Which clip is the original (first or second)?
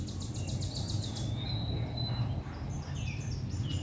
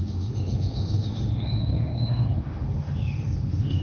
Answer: first